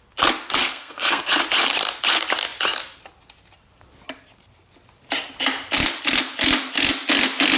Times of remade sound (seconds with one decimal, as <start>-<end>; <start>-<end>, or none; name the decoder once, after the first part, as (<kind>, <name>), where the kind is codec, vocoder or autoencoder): 0.6-1.4 (codec, SNAC)